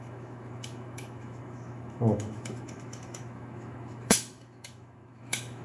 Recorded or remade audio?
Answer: remade